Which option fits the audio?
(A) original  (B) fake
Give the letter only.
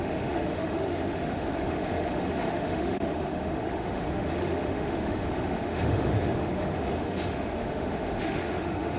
B